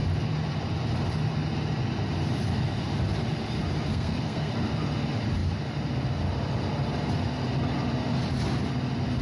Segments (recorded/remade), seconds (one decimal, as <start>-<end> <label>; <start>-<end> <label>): 0.0-3.9 recorded; 3.9-4.5 remade; 4.5-9.2 recorded